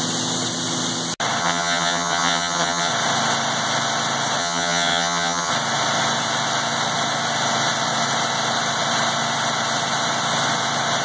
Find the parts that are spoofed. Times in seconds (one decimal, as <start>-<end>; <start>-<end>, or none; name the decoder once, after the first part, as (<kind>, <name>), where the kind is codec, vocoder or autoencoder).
1.4-2.9 (vocoder, HiFi-GAN); 4.4-5.5